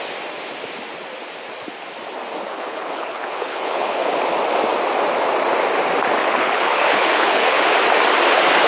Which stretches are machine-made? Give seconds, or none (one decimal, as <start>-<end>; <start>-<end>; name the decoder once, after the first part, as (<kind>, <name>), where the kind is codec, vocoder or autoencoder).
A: 2.5-4.2 (codec, HILCodec); 6.2-7.6